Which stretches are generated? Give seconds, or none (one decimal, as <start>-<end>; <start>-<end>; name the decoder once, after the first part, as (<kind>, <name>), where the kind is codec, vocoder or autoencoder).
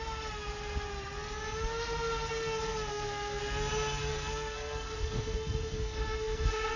2.9-3.4 (codec, SNAC); 4.1-6.8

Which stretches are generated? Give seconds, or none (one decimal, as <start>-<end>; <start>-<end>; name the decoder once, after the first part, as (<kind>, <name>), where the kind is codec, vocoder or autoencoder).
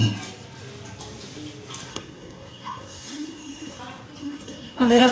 1.9-3.8 (codec, SNAC); 4.2-5.1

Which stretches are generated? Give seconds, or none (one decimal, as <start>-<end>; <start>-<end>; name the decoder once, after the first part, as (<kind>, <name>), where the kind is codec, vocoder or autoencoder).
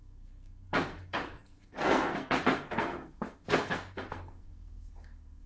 0.0-5.5 (codec, SNAC)